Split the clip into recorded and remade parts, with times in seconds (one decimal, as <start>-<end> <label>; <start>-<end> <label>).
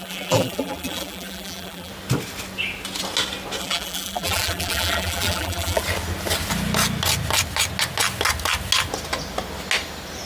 0.0-1.9 remade; 1.9-3.6 recorded; 3.6-5.8 remade; 5.8-10.3 recorded